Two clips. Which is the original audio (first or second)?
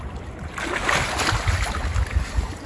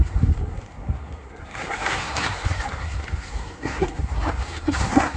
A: first